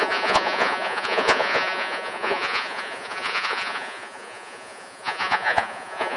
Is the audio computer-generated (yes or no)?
yes